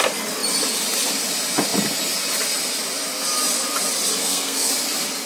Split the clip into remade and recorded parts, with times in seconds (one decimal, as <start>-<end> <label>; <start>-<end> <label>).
0.0-4.2 recorded; 4.2-4.7 remade; 4.7-5.3 recorded